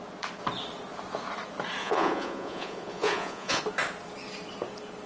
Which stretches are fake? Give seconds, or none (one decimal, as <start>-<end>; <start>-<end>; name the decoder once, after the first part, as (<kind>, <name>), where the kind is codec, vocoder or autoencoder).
1.8-3.6 (vocoder, Vocos)